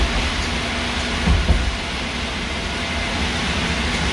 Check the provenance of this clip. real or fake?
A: real